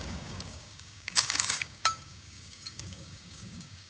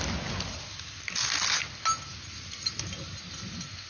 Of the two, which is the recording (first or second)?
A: second